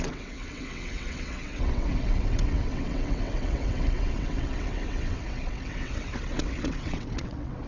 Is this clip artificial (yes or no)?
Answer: yes